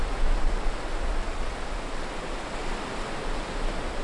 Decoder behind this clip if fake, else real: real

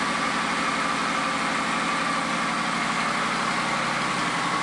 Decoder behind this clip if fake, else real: real